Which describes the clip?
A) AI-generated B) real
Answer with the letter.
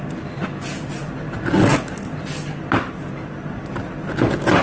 B